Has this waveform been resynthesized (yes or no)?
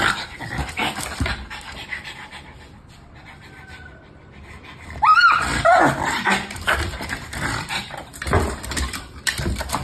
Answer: yes